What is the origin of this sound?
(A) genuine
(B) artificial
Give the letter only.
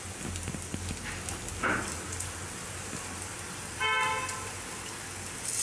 A